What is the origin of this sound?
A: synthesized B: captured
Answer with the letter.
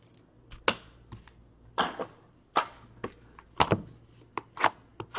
B